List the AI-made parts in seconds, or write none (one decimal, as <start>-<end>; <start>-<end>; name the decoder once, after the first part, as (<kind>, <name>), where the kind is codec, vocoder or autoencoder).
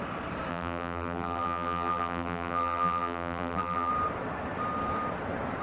0.5-3.9 (vocoder, BigVGAN v2)